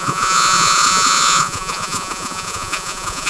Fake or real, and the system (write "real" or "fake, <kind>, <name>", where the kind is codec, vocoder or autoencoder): fake, vocoder, Vocos